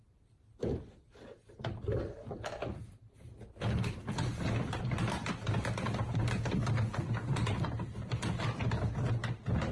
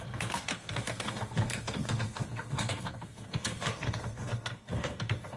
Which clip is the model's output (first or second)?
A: second